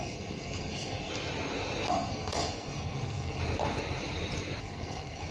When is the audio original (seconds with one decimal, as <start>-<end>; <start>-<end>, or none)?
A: 1.1-1.9; 3.4-4.6